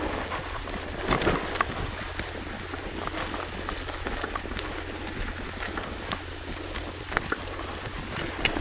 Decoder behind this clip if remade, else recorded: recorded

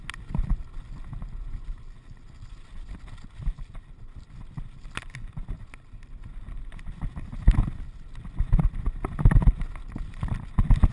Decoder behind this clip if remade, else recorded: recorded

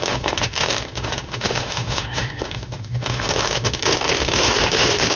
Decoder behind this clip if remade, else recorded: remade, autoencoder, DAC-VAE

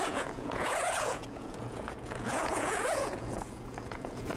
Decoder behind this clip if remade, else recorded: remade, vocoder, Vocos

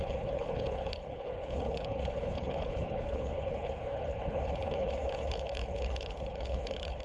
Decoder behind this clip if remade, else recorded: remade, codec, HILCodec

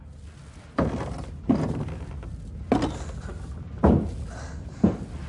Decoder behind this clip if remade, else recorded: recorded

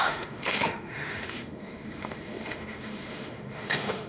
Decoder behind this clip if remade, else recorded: remade, autoencoder, DAC-VAE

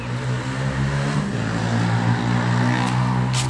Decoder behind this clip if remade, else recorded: recorded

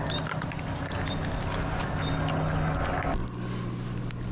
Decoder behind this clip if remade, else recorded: recorded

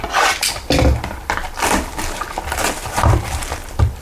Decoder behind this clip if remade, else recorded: recorded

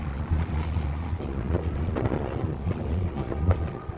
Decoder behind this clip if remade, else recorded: remade, vocoder, Vocos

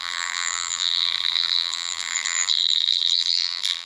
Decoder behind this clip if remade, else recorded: remade, vocoder, BigVGAN v2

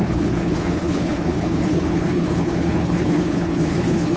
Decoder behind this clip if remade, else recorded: remade, codec, HILCodec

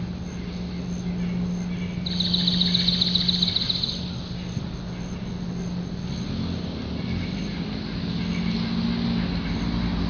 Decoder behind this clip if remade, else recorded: recorded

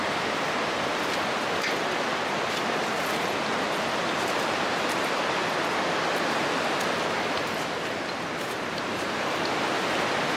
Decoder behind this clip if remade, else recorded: recorded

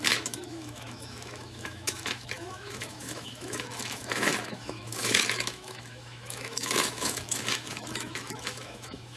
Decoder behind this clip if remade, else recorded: remade, autoencoder, DAC-VAE